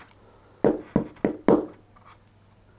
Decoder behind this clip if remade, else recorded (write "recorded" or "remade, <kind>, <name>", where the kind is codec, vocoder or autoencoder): recorded